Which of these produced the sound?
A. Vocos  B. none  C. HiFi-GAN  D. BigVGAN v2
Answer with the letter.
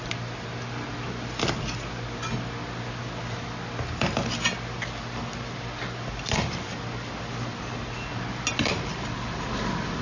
B